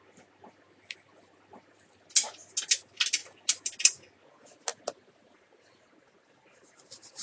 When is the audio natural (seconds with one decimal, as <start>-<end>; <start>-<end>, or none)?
0.0-7.2